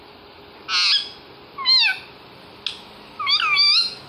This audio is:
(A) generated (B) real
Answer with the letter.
B